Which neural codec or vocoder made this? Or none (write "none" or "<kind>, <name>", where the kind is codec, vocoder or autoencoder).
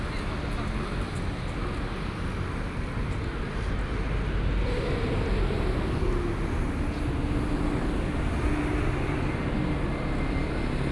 none